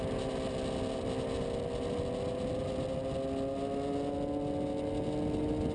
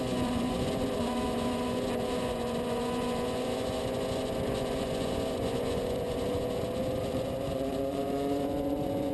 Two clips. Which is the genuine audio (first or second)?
first